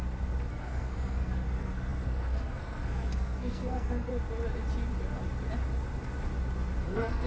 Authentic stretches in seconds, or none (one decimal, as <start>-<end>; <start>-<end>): 0.0-0.5; 4.1-6.8

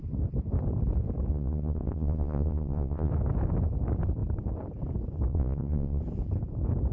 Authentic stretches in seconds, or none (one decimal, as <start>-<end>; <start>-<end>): 0.0-1.3; 3.1-5.3; 6.0-6.9